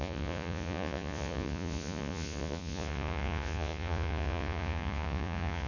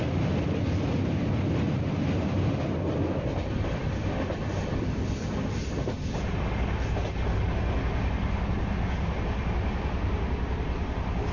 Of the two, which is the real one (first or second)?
second